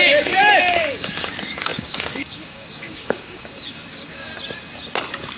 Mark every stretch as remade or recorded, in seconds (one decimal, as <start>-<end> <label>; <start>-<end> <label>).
0.0-4.3 remade; 4.3-5.4 recorded